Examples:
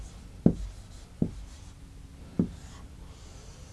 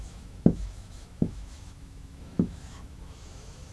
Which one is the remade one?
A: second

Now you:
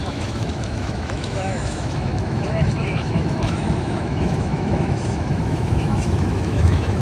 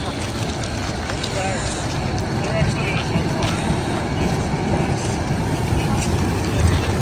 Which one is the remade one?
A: first